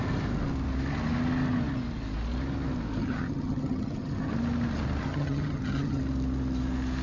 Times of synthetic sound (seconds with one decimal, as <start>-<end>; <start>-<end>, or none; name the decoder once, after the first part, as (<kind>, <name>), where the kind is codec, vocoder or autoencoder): 3.0-4.3 (vocoder, HiFi-GAN); 5.0-6.0